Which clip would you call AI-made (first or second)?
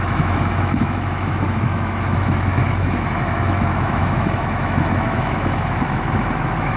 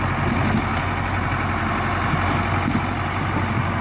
first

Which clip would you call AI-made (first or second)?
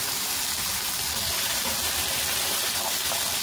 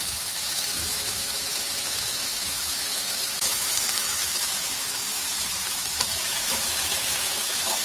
second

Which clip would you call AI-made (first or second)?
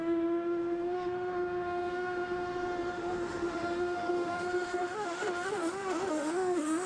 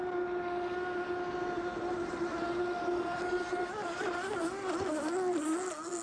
first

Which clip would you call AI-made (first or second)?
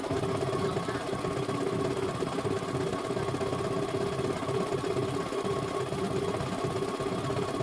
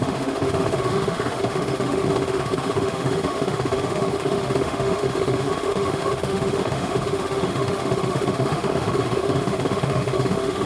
second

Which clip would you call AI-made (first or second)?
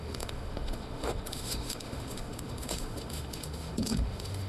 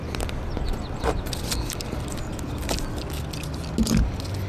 first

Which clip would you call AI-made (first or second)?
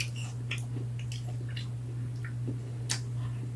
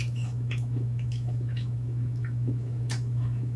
second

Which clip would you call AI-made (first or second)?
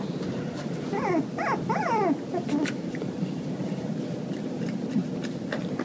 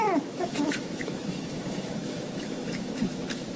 second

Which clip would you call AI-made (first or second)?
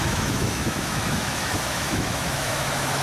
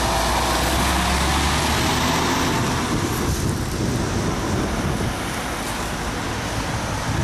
first